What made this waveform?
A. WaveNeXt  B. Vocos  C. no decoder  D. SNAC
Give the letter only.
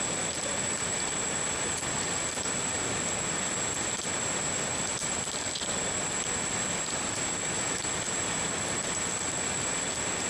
C